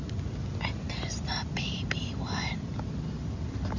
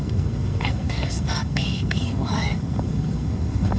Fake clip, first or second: second